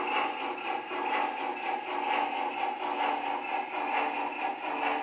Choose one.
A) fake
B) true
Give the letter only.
B